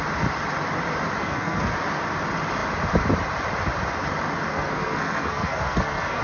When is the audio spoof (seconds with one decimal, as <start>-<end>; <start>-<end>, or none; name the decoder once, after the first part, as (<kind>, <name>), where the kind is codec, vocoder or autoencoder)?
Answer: 1.2-1.7 (codec, SNAC); 4.5-6.2